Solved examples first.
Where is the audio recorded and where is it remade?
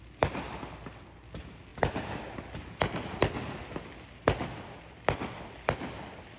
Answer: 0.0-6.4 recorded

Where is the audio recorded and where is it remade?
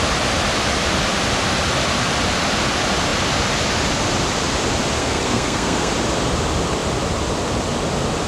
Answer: 0.0-5.0 recorded; 5.0-5.9 remade; 5.9-8.3 recorded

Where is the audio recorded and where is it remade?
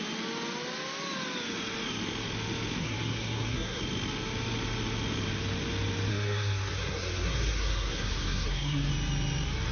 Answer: 0.0-2.8 recorded; 2.8-3.8 remade; 3.8-6.1 recorded; 6.1-8.9 remade; 8.9-9.7 recorded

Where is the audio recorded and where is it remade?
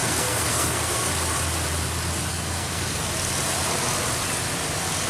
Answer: 0.0-1.1 remade; 1.1-2.3 recorded; 2.3-3.1 remade; 3.1-5.1 recorded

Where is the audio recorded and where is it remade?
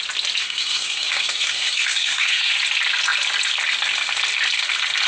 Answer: 0.0-0.4 recorded; 0.4-2.5 remade; 2.5-5.1 recorded